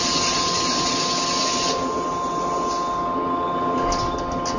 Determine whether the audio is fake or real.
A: real